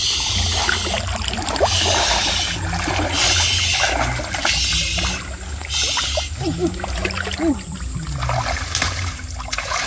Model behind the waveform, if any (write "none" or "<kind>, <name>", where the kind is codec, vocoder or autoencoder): none